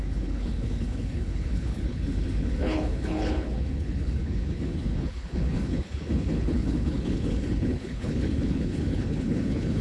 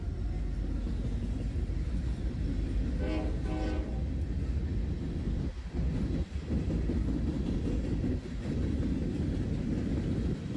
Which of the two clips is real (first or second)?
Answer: second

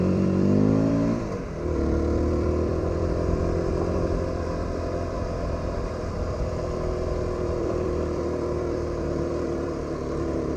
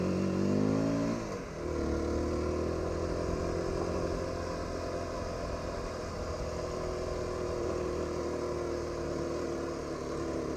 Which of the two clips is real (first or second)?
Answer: second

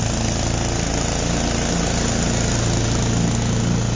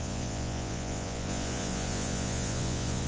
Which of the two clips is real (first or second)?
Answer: first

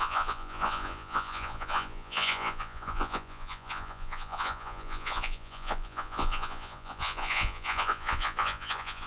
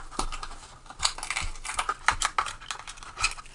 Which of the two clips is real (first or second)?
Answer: second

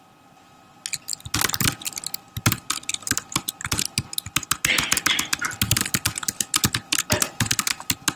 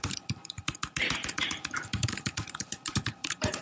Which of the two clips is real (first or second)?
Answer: first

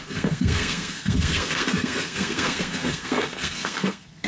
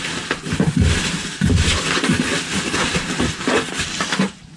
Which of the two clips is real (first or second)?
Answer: second